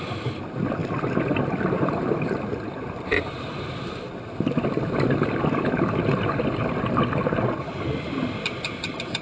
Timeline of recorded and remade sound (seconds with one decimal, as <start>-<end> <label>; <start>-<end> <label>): 0.0-9.2 recorded

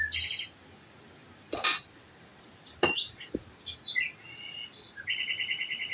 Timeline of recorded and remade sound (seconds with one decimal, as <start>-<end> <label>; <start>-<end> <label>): 0.0-5.9 recorded